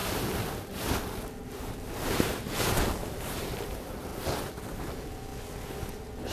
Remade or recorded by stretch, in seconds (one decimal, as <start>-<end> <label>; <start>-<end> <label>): 0.0-1.0 recorded; 1.0-4.1 remade; 4.1-4.7 recorded; 4.7-5.3 remade; 5.3-6.3 recorded